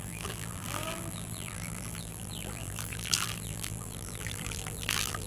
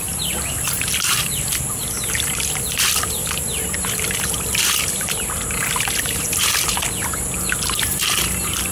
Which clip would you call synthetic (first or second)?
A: first